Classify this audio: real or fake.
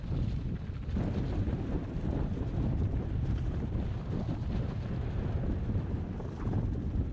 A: real